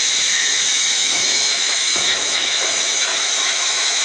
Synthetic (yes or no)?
yes